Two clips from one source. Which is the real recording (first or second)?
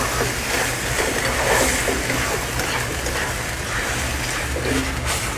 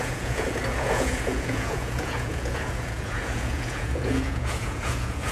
first